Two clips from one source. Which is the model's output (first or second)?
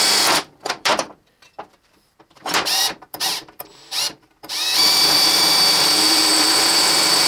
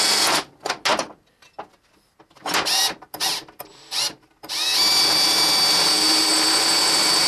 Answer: first